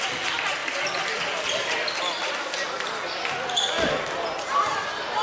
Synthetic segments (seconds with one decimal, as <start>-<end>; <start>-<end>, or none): none